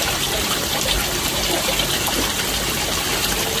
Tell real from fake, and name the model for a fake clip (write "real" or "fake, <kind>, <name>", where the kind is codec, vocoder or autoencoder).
fake, vocoder, BigVGAN v2